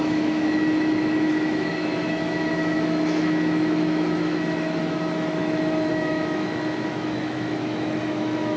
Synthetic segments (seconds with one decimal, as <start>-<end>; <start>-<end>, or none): 0.0-8.6